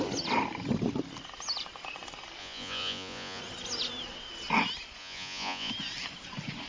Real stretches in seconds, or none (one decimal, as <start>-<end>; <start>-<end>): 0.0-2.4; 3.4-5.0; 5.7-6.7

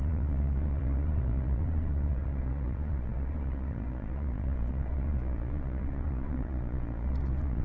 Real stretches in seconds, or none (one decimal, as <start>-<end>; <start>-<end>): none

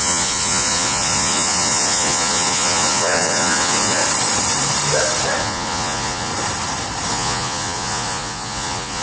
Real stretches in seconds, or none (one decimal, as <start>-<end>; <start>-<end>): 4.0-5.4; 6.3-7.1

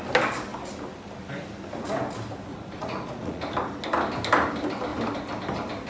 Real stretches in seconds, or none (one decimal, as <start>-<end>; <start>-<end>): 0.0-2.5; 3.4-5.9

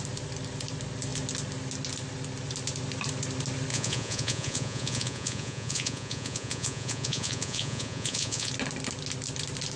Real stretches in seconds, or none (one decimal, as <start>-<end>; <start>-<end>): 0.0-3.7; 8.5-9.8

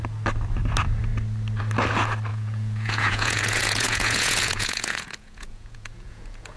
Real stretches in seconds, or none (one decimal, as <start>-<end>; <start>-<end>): 0.0-2.3